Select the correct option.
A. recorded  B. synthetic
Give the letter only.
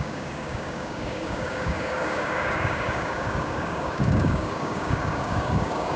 B